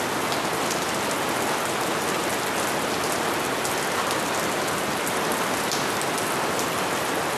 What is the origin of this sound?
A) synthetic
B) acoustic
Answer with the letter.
B